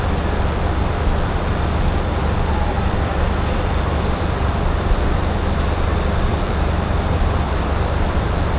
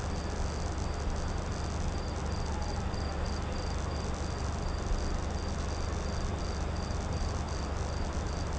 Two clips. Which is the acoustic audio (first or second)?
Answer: second